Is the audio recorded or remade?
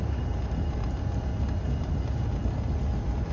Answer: recorded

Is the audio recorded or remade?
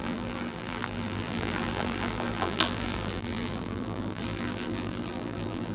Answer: remade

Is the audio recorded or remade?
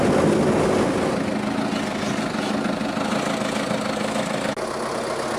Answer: recorded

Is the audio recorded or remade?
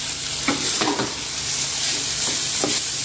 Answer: remade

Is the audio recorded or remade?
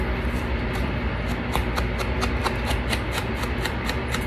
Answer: recorded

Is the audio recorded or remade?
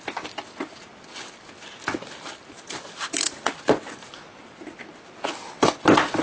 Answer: remade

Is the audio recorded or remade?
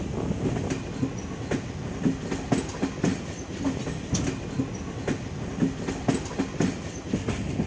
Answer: recorded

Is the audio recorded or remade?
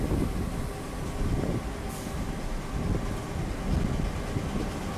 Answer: recorded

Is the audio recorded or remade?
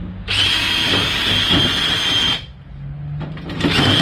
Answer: recorded